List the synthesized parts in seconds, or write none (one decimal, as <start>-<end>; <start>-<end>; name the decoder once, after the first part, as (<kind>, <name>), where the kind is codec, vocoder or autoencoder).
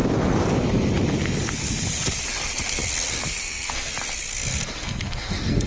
3.2-3.9 (codec, SNAC); 4.8-5.7